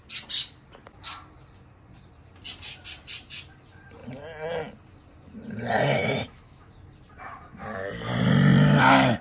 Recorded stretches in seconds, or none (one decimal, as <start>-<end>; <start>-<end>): 0.0-6.0; 6.7-9.2